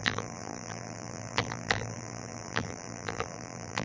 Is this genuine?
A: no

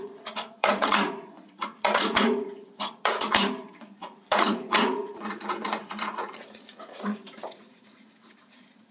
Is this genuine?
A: no